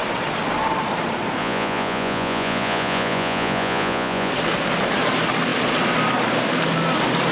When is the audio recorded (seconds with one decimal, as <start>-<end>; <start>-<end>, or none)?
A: 0.0-1.4; 4.3-7.3